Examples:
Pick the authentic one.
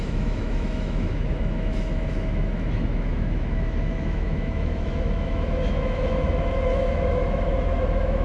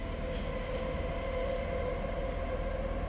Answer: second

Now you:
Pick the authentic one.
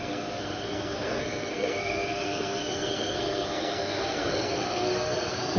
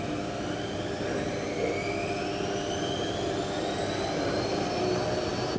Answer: second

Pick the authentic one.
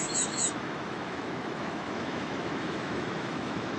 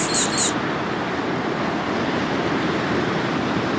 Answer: second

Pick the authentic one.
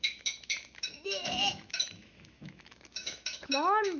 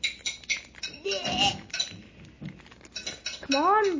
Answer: second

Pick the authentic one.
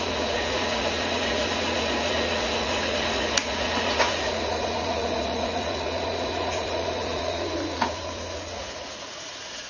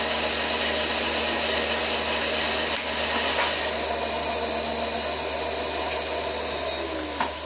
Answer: second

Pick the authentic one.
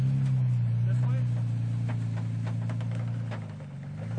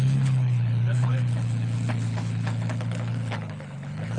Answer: first